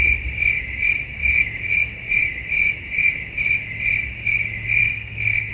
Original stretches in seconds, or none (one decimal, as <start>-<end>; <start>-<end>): 0.0-4.8